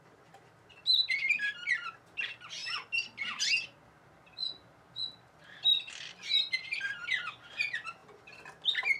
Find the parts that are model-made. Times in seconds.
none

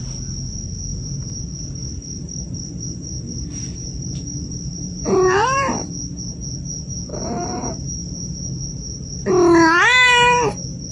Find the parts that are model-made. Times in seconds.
0.9-1.4 (vocoder, BigVGAN v2); 1.8-5.9

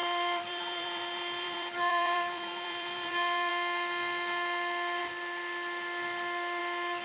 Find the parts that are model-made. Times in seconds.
0.0-3.5 (vocoder, BigVGAN v2)